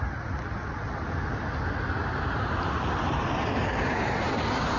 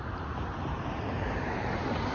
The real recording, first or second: first